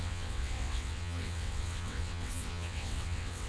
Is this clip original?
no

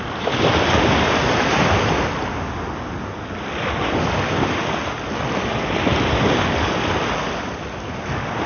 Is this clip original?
yes